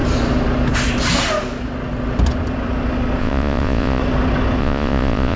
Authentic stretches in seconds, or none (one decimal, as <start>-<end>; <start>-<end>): 0.0-3.2; 4.0-4.6